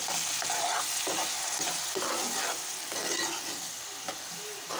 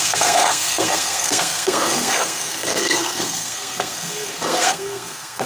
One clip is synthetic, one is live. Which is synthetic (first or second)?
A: second